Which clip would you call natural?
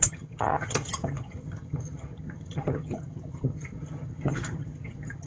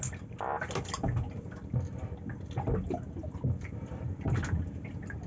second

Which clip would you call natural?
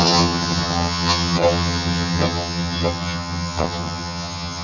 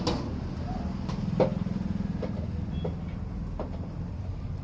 second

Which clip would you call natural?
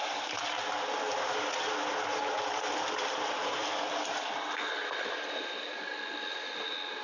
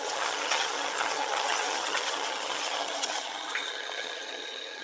first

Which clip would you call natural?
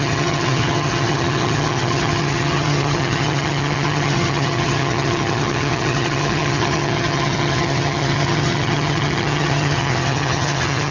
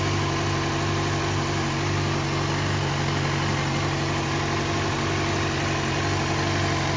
second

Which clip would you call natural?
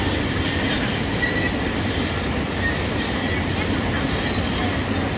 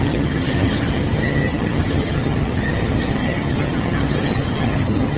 first